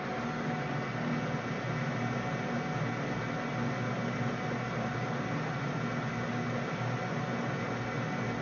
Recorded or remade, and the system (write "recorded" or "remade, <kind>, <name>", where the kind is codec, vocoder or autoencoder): recorded